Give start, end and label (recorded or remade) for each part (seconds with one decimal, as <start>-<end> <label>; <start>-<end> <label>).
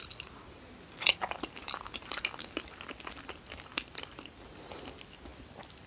0.0-1.6 recorded; 1.6-2.2 remade; 2.2-3.7 recorded; 3.7-4.5 remade; 4.5-5.9 recorded